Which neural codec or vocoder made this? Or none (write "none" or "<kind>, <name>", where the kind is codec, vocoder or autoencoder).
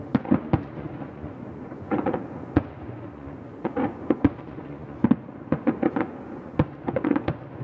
vocoder, Vocos